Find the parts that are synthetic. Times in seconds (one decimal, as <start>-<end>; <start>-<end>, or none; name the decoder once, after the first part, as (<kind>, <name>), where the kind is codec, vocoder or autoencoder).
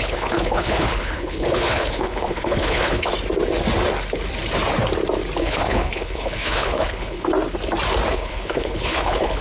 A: 0.0-3.1 (codec, HILCodec); 5.4-7.3; 8.1-9.4